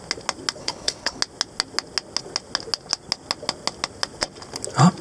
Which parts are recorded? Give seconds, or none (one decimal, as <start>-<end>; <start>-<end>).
0.0-0.6; 1.2-5.0